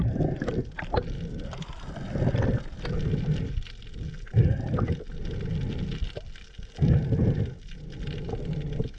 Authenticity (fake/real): real